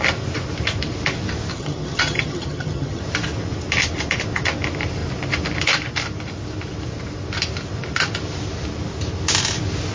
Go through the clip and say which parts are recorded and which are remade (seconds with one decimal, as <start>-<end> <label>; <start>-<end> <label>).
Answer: 0.0-1.5 recorded; 1.5-3.0 remade; 3.0-9.9 recorded